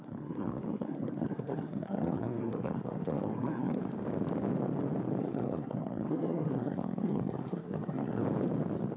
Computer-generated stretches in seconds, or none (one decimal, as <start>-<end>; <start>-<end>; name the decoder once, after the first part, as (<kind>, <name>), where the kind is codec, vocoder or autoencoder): 0.0-3.8 (codec, SNAC); 5.2-8.2